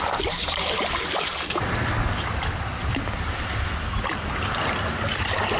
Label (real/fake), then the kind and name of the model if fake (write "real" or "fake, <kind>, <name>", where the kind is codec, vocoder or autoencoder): real